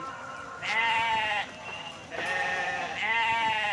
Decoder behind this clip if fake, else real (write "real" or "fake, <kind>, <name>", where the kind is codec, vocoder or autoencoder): fake, vocoder, BigVGAN v2